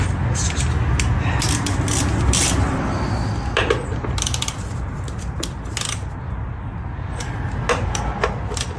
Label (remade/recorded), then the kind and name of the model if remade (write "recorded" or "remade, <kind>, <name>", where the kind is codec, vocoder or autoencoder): recorded